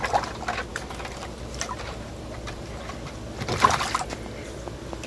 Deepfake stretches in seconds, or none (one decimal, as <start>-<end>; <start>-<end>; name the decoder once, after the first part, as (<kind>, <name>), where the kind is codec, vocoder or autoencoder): 0.7-3.8 (vocoder, BigVGAN v2)